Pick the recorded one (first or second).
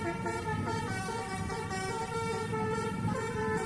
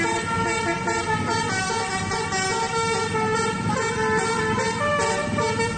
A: second